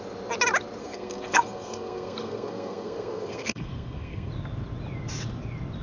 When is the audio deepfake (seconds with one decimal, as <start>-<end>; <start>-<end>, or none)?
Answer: 0.8-4.3